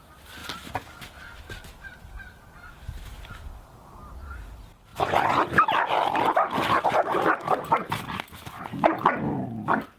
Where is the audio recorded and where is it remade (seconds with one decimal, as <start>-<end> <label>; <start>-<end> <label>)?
0.0-4.9 recorded; 4.9-8.0 remade; 8.0-10.0 recorded